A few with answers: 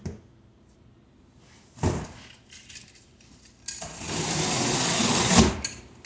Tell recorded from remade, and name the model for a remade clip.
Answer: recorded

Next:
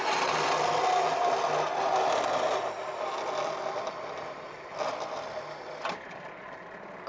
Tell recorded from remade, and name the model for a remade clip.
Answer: recorded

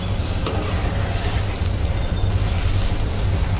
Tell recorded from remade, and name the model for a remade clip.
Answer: recorded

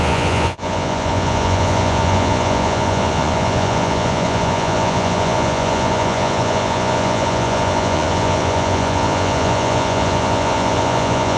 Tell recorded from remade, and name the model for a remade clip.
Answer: remade, vocoder, Vocos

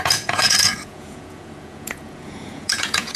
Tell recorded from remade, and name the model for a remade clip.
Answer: remade, vocoder, Vocos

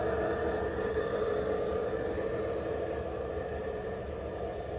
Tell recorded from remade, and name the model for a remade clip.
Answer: recorded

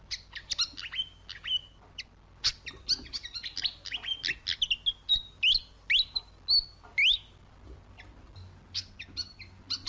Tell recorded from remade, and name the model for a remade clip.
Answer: recorded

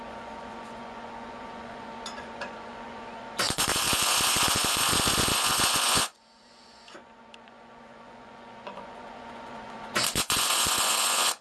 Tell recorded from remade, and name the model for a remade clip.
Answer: remade, vocoder, Vocos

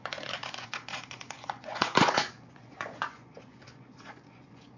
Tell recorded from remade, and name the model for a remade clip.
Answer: remade, vocoder, Vocos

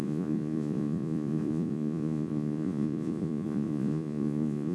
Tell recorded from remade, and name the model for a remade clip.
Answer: remade, vocoder, Vocos